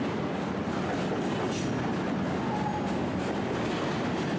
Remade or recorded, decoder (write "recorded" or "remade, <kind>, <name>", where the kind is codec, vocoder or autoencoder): recorded